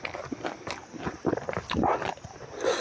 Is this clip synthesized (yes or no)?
no